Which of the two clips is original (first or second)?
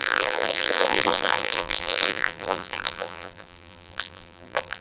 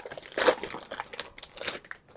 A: second